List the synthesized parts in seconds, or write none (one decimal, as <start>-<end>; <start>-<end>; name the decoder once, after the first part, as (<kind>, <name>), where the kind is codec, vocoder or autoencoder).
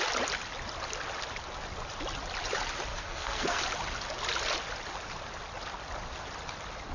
2.9-3.6 (codec, SNAC)